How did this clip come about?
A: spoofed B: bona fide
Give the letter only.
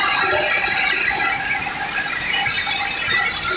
B